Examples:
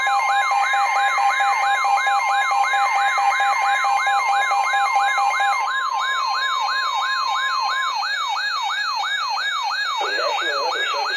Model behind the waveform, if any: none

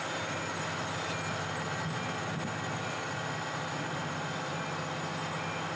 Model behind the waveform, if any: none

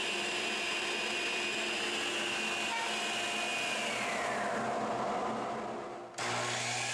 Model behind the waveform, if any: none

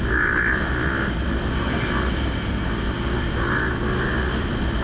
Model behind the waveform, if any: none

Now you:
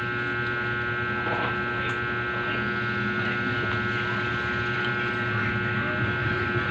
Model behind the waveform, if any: none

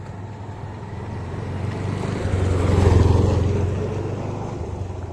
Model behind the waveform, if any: none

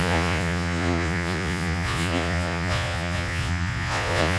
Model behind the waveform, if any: vocoder, Vocos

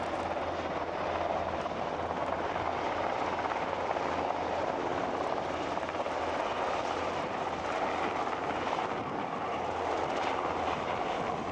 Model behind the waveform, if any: none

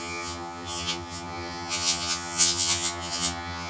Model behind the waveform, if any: vocoder, HiFi-GAN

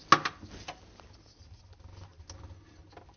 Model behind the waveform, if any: none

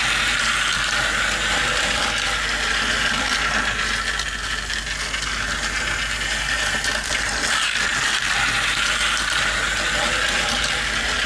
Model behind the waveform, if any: none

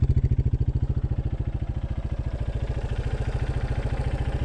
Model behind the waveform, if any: none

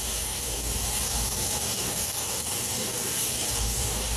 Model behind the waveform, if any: codec, DAC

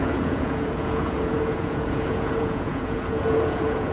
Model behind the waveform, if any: vocoder, Vocos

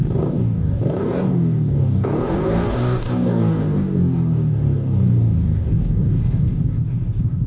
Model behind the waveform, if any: codec, DAC